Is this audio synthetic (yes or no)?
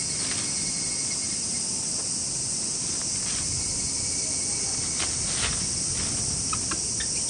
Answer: no